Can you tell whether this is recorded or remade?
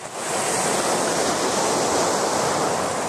recorded